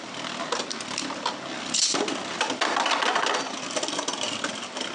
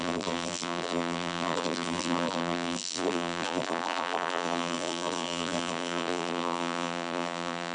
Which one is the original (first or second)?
first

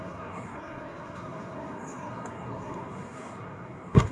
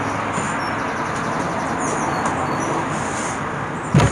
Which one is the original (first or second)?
second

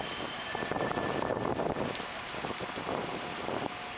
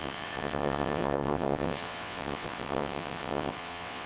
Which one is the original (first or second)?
first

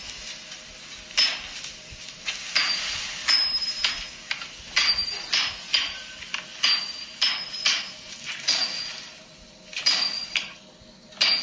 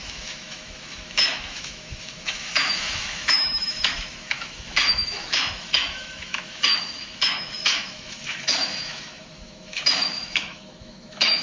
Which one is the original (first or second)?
first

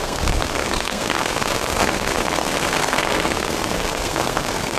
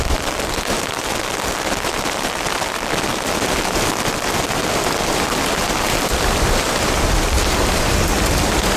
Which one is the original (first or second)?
second